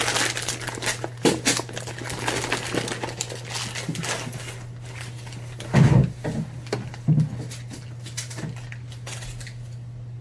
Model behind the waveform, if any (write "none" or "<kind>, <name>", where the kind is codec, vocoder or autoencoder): none